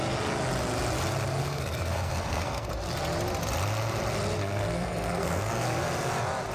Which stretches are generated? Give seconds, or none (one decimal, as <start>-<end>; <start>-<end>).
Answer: 1.4-2.7; 4.4-5.6